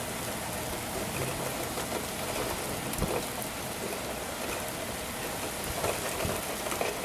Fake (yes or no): no